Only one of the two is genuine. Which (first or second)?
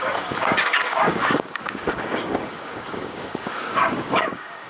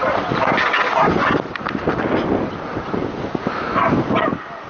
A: second